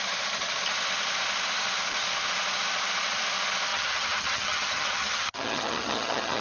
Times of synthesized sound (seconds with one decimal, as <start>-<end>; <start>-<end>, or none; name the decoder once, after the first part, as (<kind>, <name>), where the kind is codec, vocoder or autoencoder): 3.7-6.4 (vocoder, HiFi-GAN)

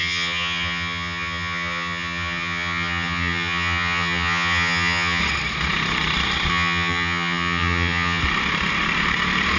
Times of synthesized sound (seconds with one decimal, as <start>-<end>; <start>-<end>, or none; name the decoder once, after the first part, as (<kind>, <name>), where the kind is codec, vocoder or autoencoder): 0.0-5.2 (vocoder, HiFi-GAN); 6.5-8.2

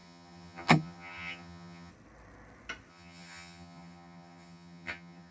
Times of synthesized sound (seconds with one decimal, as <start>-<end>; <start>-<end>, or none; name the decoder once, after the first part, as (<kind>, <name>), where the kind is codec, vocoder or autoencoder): 0.0-1.9 (vocoder, HiFi-GAN); 2.9-5.3

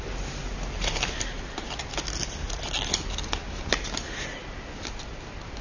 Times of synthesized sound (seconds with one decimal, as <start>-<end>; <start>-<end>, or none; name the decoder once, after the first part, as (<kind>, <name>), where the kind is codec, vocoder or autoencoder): none

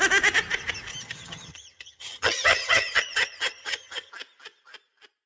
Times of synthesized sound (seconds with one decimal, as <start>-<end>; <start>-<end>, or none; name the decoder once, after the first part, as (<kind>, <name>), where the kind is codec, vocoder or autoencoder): 0.9-4.1 (vocoder, HiFi-GAN)

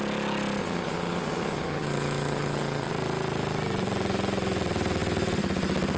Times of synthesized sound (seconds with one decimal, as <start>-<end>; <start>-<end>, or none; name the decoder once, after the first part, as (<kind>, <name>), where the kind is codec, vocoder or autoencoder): 0.6-2.9 (vocoder, HiFi-GAN)